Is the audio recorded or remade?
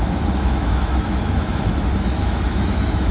remade